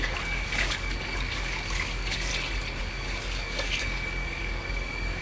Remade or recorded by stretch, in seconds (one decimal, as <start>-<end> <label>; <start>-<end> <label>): 0.0-2.3 remade; 2.3-2.8 recorded; 2.8-5.2 remade